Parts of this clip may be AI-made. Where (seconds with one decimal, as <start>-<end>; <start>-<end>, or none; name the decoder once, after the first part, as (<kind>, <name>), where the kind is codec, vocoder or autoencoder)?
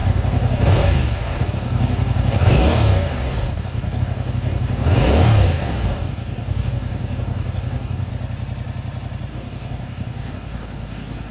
0.0-8.1 (codec, DAC); 9.3-11.3